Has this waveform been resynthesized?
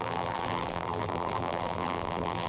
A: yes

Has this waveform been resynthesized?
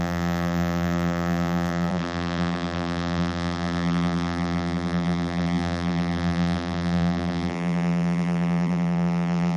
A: yes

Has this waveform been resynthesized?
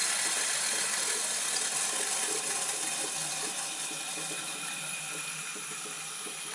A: no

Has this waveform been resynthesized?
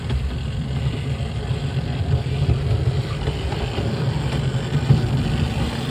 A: no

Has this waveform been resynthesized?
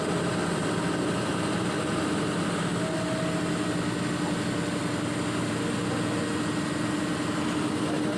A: no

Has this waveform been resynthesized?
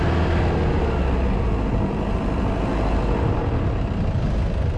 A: no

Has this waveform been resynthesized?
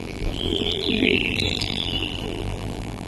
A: yes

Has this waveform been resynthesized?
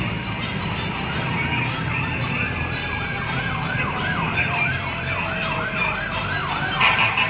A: yes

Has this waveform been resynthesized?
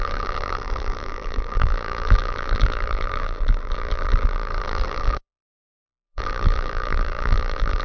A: yes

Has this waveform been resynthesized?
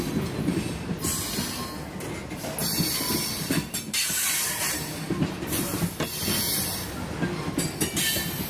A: no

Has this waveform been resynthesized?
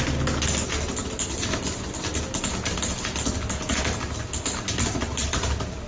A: no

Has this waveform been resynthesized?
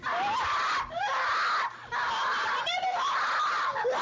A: yes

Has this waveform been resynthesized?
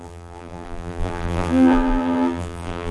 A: yes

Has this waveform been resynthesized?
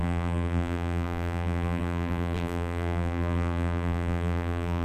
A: yes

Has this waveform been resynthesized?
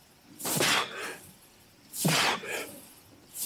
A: yes